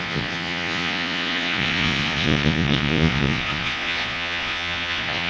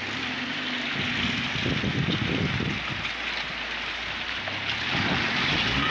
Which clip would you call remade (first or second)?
first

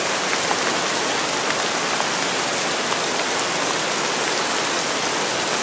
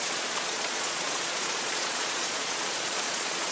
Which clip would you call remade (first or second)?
second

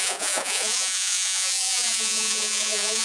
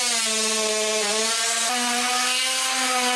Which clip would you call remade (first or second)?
first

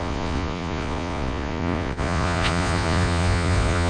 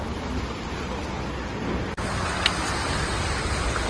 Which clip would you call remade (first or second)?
first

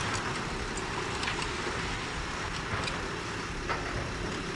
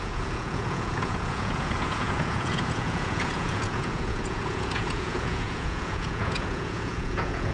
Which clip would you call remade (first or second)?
second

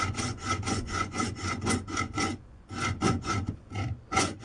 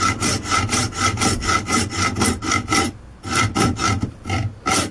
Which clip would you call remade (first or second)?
first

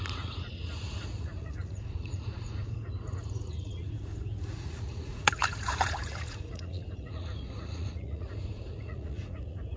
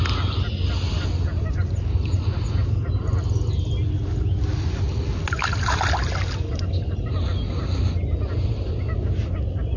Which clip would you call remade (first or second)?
first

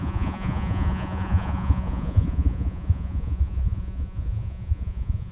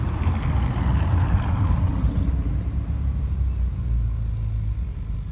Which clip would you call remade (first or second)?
first